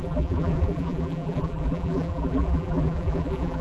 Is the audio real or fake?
fake